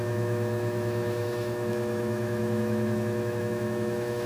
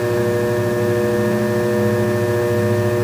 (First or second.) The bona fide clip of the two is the second